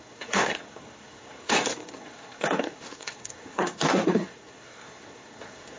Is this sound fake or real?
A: fake